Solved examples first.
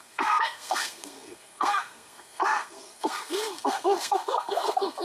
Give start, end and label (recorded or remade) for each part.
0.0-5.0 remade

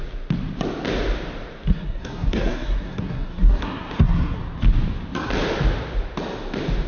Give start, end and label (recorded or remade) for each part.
0.0-1.7 recorded; 1.7-4.4 remade; 4.4-6.9 recorded

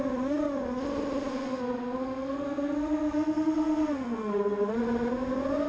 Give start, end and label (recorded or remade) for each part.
0.0-1.3 recorded; 1.3-4.7 remade; 4.7-5.7 recorded

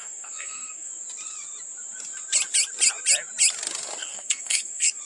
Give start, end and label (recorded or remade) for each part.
0.0-0.9 remade; 0.9-4.0 recorded; 4.0-5.0 remade

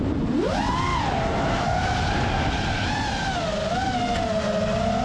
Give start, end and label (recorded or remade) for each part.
0.0-5.0 recorded

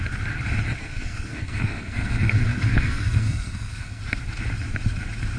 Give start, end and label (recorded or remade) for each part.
0.0-0.8 recorded; 0.8-4.0 remade; 4.0-5.4 recorded